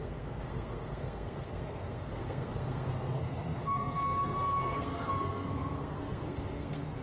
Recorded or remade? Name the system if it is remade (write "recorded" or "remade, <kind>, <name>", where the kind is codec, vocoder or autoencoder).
remade, codec, SNAC